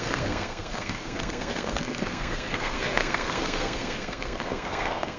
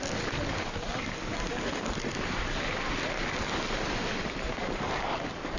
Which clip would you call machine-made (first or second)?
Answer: first